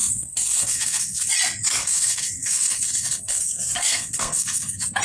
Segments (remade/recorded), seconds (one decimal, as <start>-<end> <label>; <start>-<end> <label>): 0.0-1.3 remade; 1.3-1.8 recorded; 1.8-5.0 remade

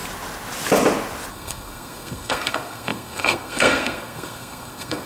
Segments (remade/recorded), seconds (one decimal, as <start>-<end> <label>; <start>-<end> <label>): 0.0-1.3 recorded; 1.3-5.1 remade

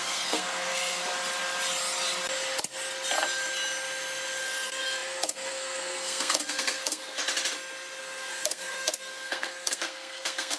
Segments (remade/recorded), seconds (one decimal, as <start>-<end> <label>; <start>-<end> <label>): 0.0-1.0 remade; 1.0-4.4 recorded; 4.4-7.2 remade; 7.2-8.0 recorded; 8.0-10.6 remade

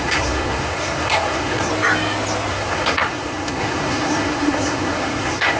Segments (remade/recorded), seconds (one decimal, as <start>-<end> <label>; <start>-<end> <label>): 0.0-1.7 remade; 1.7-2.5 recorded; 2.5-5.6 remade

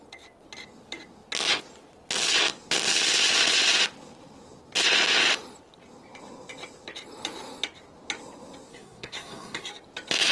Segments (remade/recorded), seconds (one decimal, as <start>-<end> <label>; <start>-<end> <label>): 0.0-8.7 recorded; 8.7-9.7 remade; 9.7-10.3 recorded

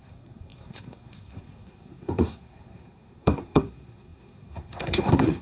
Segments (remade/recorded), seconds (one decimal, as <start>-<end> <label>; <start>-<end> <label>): 0.0-5.4 remade

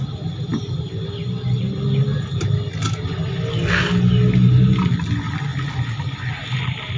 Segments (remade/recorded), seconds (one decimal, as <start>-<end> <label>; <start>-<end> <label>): 0.0-7.0 recorded